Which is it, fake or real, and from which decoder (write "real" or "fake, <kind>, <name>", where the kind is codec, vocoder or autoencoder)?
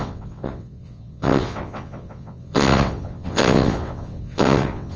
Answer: fake, vocoder, WaveNeXt